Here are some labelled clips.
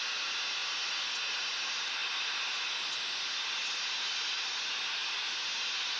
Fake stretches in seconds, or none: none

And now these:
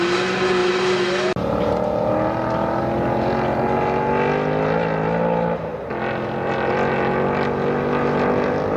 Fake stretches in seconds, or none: none

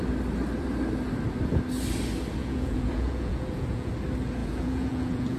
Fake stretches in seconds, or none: 2.4-3.9 (vocoder, Vocos); 4.4-5.4

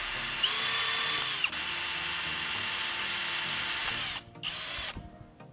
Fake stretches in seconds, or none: none

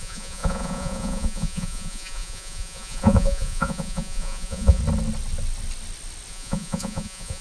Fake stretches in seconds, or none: 0.0-4.8 (vocoder, Vocos); 6.3-7.4

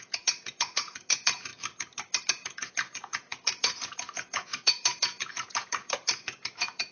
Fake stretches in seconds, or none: 0.0-1.5 (vocoder, Vocos); 2.3-6.9